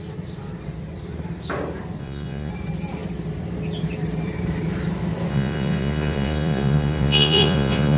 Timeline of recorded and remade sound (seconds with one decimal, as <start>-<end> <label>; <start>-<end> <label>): 0.0-2.0 recorded; 2.0-2.5 remade; 2.5-5.3 recorded; 5.3-8.0 remade